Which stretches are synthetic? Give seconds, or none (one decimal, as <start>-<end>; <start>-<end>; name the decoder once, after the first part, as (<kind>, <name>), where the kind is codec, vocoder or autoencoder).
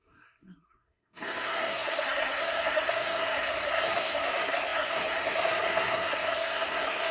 0.0-7.1 (codec, SNAC)